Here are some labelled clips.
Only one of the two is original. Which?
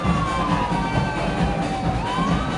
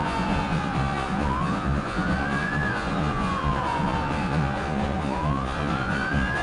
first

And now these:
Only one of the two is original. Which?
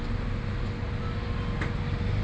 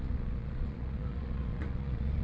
first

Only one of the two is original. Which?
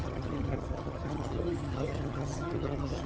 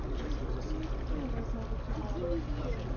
second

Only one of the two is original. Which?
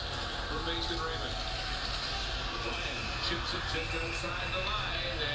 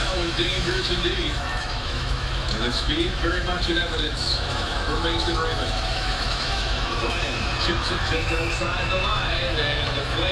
first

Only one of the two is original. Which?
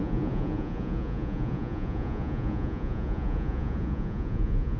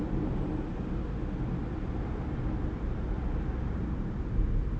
second